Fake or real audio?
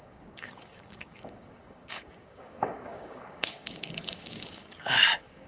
fake